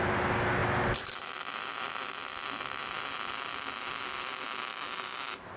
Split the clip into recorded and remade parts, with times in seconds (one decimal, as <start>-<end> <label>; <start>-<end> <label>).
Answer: 0.0-5.6 recorded

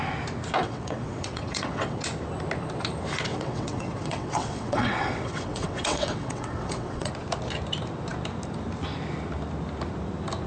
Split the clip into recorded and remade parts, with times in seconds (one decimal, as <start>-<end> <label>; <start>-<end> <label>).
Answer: 0.0-0.6 recorded; 0.6-2.0 remade; 2.0-3.3 recorded; 3.3-7.1 remade; 7.1-10.5 recorded